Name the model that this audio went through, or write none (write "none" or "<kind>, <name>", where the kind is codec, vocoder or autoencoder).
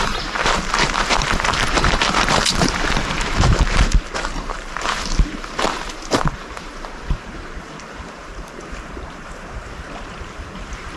vocoder, BigVGAN v2